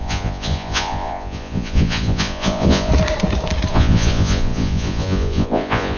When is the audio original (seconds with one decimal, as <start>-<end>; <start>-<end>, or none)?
2.9-3.7